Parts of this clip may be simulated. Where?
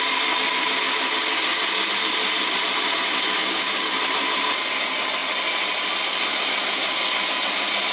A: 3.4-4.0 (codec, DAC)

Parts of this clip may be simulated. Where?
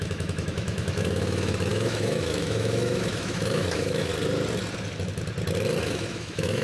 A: 0.0-4.1 (autoencoder, DAC-VAE); 5.8-6.6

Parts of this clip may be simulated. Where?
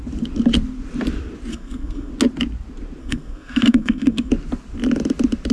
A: 1.5-2.1 (codec, SNAC); 3.0-4.3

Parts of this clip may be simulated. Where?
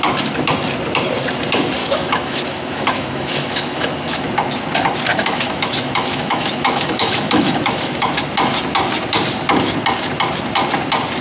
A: 1.8-4.2 (autoencoder, DAC-VAE); 5.1-8.1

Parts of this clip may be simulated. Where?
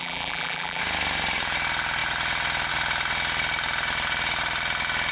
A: 0.0-0.8 (vocoder, BigVGAN v2)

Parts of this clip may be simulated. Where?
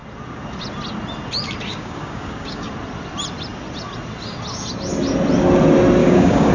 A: 1.7-2.7 (codec, DAC); 6.0-6.5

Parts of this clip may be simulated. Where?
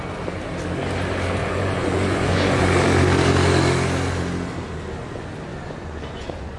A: 1.4-2.6 (vocoder, Vocos); 5.5-6.6